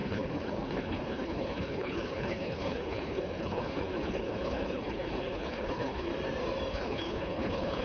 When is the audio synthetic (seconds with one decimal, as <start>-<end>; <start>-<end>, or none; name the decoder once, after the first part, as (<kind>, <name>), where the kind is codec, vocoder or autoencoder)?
0.0-6.1 (codec, HILCodec); 6.7-7.8